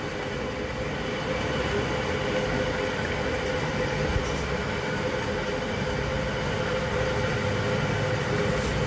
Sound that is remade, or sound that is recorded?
recorded